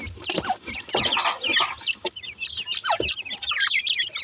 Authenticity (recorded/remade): recorded